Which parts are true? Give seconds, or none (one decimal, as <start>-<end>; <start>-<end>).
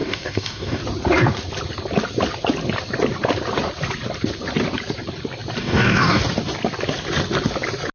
0.8-5.6; 6.2-7.9